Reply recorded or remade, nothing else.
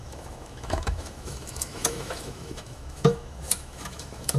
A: remade